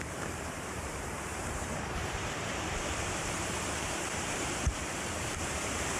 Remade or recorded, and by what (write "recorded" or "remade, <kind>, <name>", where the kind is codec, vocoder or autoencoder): remade, vocoder, BigVGAN v2